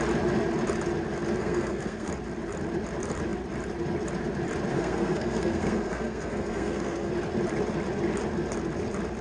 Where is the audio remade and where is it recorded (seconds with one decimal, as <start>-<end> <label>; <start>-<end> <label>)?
0.0-1.4 recorded; 1.4-2.1 remade; 2.1-4.7 recorded; 4.7-7.1 remade; 7.1-9.2 recorded